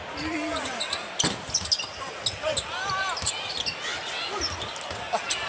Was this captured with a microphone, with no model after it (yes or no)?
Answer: yes